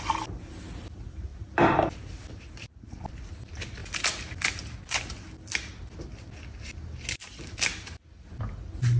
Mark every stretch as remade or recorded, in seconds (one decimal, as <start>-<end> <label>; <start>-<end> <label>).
0.0-3.8 remade; 3.8-8.3 recorded; 8.3-9.0 remade